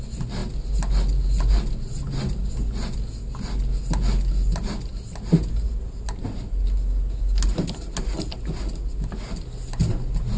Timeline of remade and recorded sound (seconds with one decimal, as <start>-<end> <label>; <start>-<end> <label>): 0.0-10.4 recorded